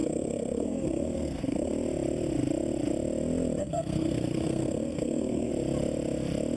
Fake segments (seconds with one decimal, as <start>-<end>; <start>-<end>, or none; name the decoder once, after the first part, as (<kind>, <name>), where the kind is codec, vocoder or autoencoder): 0.0-1.7 (codec, SNAC); 3.6-5.5